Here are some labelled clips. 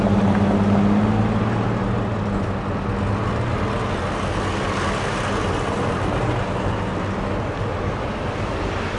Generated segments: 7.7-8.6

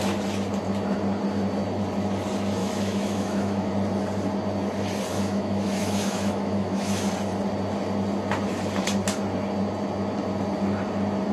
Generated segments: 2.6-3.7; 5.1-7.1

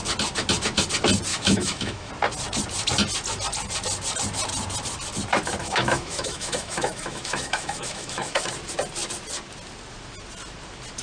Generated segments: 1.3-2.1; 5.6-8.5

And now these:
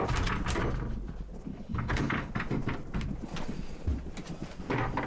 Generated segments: 1.5-2.3

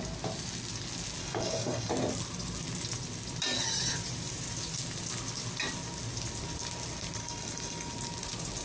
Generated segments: 1.2-1.9; 7.2-7.9